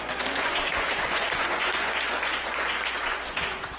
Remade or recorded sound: remade